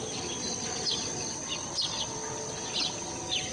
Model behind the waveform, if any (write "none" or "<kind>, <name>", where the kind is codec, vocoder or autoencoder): none